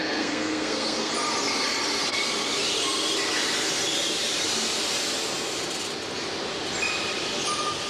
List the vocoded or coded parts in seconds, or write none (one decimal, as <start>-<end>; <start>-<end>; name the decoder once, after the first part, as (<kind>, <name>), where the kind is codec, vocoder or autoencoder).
0.0-1.1 (codec, SNAC)